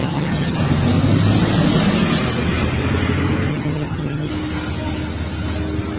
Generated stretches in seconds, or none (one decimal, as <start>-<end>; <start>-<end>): 0.0-0.6; 3.5-4.3